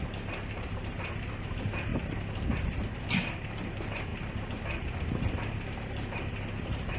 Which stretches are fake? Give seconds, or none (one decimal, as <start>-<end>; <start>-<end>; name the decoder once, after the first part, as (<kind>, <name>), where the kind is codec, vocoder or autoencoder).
0.0-1.9 (vocoder, BigVGAN v2); 2.6-7.0